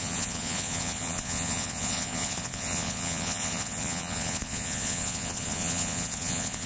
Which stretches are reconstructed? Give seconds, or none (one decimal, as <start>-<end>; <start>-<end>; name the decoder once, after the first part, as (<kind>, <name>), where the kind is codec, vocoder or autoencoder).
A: 0.0-6.7 (vocoder, Vocos)